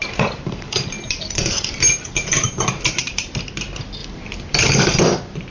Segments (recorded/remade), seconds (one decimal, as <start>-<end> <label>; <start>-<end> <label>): 0.0-3.3 remade; 3.3-4.0 recorded; 4.0-5.0 remade; 5.0-5.5 recorded